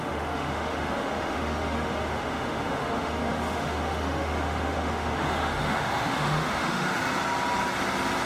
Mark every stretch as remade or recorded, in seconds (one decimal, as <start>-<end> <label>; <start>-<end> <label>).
0.0-7.0 remade; 7.0-8.3 recorded